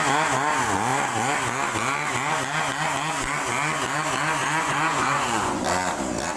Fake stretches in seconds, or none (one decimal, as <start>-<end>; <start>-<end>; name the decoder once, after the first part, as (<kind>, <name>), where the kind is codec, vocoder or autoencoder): 4.4-5.6 (vocoder, Vocos)